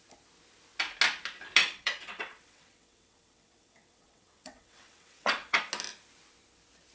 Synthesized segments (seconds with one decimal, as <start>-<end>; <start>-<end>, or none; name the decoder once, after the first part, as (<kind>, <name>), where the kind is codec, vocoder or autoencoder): 1.6-5.7 (vocoder, WaveNeXt)